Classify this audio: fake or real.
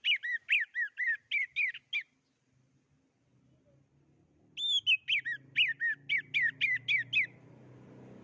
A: real